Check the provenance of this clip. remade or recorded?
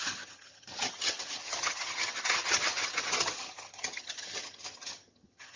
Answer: remade